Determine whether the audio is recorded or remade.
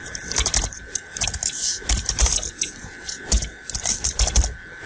remade